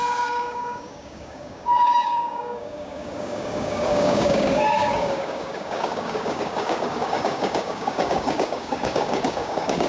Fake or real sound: fake